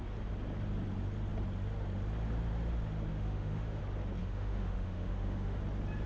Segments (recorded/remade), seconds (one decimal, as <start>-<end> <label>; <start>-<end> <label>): 0.0-3.1 recorded; 3.1-3.8 remade; 3.8-4.2 recorded; 4.2-5.6 remade; 5.6-6.1 recorded